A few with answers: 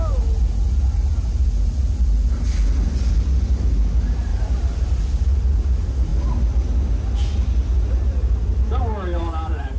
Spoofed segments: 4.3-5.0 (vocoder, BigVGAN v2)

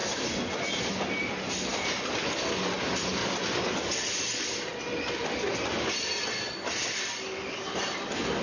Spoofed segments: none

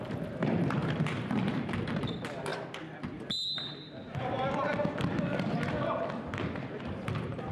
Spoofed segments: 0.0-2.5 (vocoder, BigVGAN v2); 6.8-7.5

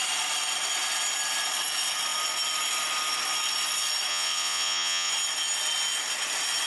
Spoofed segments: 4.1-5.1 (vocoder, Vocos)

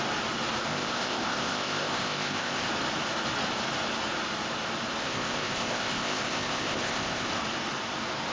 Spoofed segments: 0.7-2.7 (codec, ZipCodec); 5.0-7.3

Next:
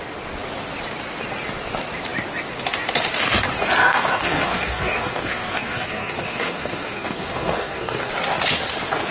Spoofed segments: 3.8-8.1 (codec, SNAC)

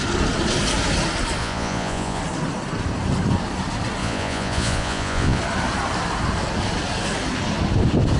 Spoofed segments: 1.4-2.2 (vocoder, Vocos); 4.0-5.4